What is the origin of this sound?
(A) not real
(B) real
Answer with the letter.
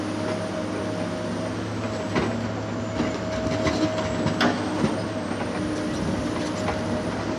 B